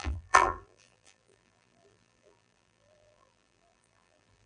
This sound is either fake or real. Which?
fake